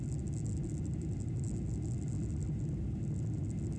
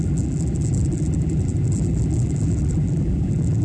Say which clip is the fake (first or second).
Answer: second